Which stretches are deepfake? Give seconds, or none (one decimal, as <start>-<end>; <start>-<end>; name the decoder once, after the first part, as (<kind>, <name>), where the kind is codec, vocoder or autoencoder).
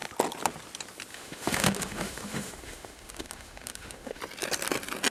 1.1-4.2 (autoencoder, DAC-VAE)